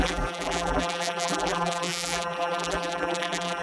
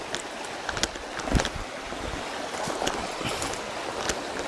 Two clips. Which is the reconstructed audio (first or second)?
first